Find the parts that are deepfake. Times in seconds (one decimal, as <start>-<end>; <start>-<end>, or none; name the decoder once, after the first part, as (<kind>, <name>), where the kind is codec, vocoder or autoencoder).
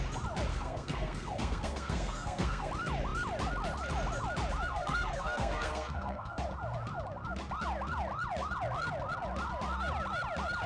0.5-2.7 (codec, SNAC); 4.7-6.4